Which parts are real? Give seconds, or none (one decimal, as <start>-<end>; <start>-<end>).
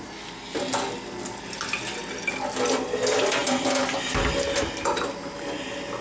0.0-6.0